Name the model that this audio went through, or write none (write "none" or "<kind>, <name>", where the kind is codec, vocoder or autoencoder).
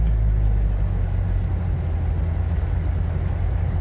none